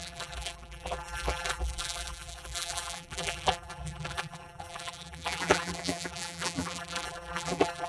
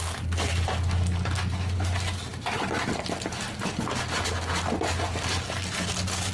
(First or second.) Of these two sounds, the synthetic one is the first